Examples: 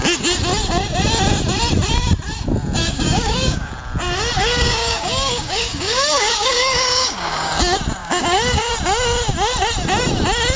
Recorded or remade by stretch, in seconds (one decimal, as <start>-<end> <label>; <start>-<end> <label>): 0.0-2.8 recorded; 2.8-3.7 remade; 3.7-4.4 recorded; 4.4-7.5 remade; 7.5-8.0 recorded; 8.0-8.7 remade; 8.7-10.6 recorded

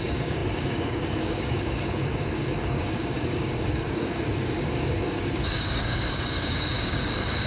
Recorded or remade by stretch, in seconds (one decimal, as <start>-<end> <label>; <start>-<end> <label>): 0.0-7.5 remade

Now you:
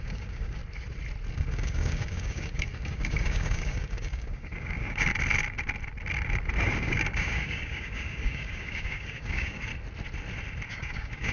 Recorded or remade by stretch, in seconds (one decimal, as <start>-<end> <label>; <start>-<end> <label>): 0.0-0.6 remade; 0.6-1.3 recorded; 1.3-5.1 remade; 5.1-6.8 recorded; 6.8-9.7 remade; 9.7-10.7 recorded; 10.7-11.3 remade

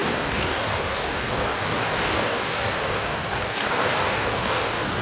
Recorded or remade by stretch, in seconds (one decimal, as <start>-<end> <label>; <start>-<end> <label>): 0.0-5.0 remade